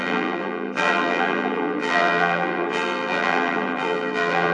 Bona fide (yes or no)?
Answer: no